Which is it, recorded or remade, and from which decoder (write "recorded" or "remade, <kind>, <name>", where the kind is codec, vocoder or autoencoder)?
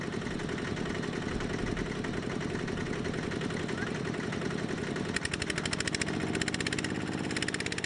recorded